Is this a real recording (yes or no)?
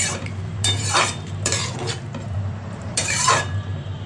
no